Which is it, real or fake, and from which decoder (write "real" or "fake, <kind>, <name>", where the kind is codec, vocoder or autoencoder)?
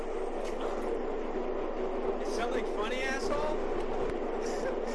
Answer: real